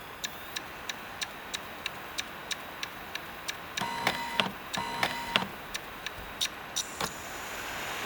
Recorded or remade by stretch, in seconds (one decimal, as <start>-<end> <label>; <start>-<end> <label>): 0.0-8.1 recorded